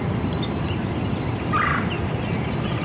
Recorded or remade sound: recorded